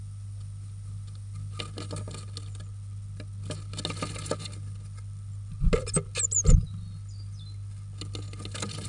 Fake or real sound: real